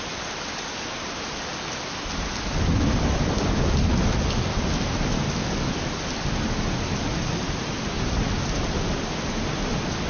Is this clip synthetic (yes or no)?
no